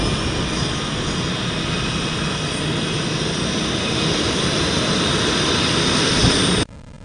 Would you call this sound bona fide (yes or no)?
yes